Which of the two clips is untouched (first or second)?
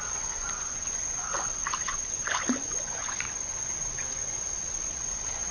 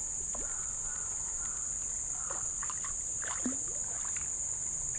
second